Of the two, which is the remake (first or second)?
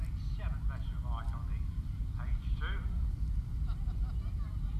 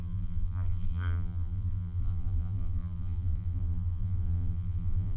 second